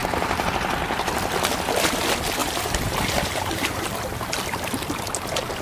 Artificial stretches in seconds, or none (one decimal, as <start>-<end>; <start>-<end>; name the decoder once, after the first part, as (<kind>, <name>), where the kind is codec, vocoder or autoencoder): 0.0-0.5 (vocoder, BigVGAN v2); 2.4-3.8